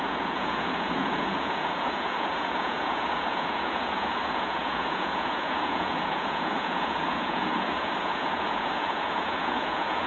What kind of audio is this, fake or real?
fake